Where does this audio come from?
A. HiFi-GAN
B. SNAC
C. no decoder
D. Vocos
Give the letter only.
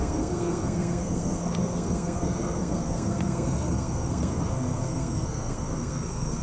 B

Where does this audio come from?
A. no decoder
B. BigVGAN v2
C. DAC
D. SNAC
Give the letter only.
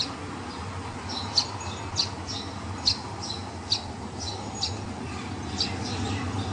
A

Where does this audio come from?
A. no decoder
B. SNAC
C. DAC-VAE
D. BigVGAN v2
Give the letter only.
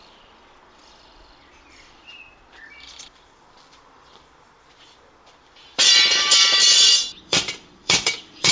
D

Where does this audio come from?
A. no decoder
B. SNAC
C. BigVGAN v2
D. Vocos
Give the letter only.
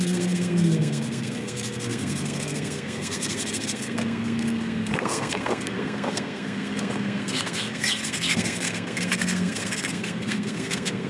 B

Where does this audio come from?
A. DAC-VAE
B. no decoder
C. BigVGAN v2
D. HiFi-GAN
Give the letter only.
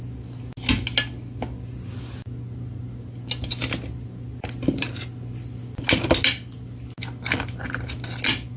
B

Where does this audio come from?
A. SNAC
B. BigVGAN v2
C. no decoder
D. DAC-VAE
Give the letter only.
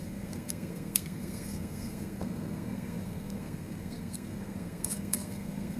A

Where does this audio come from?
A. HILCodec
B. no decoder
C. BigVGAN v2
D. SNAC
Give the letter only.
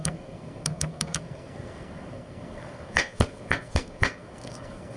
D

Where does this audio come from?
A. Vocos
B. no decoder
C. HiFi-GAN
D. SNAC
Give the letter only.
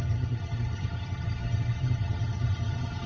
C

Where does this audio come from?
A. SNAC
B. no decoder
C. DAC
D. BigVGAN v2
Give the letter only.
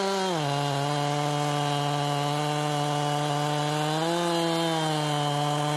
B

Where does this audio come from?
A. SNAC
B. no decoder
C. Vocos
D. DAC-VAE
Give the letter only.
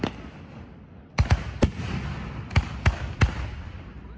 B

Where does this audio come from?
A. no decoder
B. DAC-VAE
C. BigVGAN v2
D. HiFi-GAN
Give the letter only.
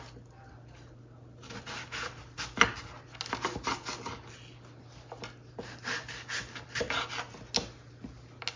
A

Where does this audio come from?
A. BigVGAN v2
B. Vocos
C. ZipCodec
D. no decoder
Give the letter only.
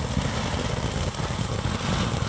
D